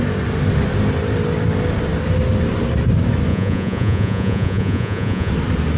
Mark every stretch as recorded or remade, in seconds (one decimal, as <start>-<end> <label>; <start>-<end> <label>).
0.0-3.3 recorded; 3.3-5.3 remade; 5.3-5.8 recorded